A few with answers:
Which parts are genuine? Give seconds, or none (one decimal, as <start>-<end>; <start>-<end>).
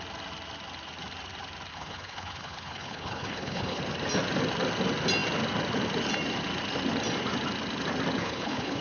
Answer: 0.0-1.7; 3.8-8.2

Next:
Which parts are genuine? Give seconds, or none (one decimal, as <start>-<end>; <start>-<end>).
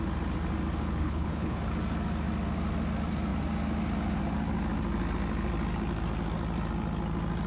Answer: 0.0-1.0; 1.6-7.5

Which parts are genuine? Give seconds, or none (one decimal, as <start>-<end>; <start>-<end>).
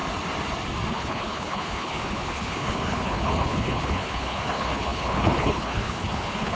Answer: 0.0-0.9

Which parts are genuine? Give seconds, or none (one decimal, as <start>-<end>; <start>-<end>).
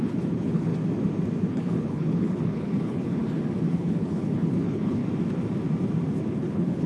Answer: 0.7-1.4; 3.2-3.7; 5.0-6.3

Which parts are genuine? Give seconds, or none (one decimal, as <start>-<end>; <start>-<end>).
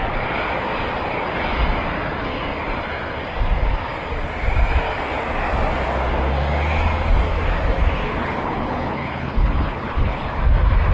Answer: 0.0-8.2; 10.4-10.9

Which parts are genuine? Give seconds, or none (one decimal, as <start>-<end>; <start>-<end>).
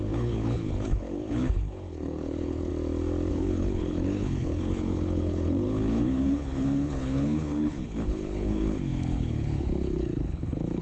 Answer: 2.7-3.3